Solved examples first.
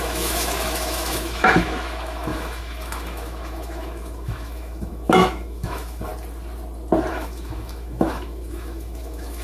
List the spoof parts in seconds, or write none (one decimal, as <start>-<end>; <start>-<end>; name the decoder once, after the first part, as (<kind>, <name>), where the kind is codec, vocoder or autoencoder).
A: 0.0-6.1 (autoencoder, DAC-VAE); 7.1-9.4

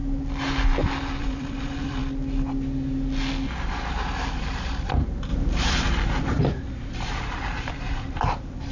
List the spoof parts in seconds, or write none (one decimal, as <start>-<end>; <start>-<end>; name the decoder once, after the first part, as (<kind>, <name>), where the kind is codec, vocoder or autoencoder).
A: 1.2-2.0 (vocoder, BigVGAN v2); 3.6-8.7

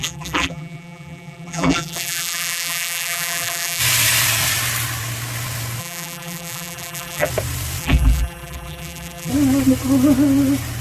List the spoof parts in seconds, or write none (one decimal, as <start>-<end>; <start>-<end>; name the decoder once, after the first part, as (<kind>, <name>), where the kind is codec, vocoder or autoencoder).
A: 0.0-3.8 (vocoder, BigVGAN v2); 5.8-7.3; 7.8-9.3

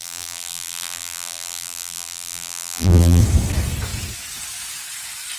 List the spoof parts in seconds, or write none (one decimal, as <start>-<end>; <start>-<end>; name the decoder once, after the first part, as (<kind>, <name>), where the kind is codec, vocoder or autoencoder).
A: 0.0-3.2 (vocoder, BigVGAN v2)

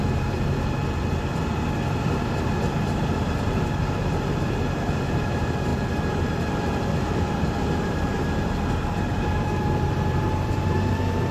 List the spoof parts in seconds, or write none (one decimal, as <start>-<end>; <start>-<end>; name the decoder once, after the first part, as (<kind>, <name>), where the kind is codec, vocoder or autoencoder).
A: 0.0-0.8 (vocoder, BigVGAN v2); 2.7-5.7; 6.2-11.3